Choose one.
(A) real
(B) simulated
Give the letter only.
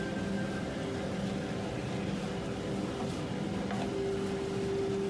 A